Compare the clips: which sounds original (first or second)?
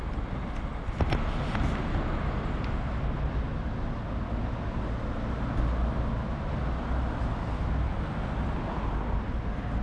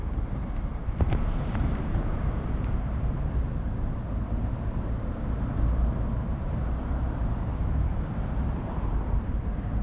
first